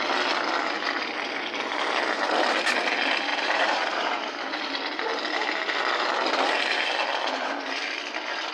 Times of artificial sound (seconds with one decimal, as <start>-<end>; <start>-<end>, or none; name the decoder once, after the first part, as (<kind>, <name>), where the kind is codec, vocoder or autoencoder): 3.3-4.2 (vocoder, BigVGAN v2)